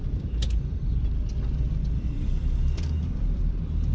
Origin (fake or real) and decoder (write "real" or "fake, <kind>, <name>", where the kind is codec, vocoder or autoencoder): fake, vocoder, BigVGAN v2